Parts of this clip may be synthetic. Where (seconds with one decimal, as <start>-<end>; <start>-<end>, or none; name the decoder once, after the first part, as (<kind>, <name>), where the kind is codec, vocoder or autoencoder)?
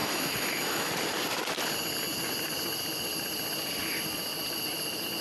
0.0-0.9 (autoencoder, DAC-VAE)